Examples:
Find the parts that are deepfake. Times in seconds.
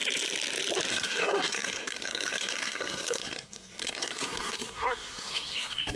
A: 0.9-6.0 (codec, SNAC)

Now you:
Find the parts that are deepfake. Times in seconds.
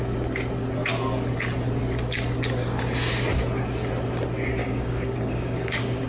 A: 4.6-6.1 (codec, DAC)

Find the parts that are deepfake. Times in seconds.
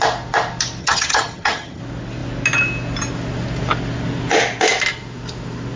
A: 0.8-1.8 (vocoder, HiFi-GAN)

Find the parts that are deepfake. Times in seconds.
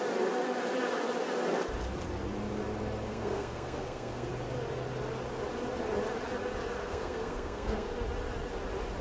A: 3.1-4.3 (codec, SNAC); 6.8-7.9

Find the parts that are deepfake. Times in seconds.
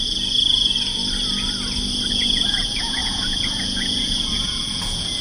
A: 0.0-1.0 (vocoder, Vocos); 2.1-5.2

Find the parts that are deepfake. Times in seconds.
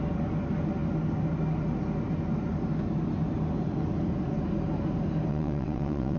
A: 5.3-6.2 (vocoder, WaveNeXt)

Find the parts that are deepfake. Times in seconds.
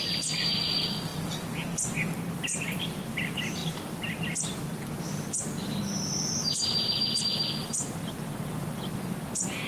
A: none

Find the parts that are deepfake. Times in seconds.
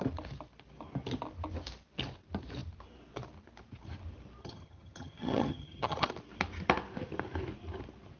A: 4.4-6.1 (vocoder, HiFi-GAN)